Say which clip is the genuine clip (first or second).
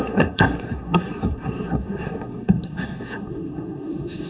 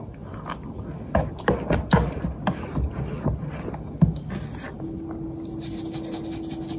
second